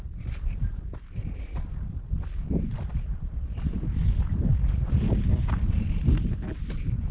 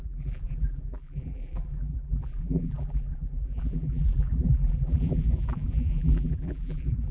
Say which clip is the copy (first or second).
second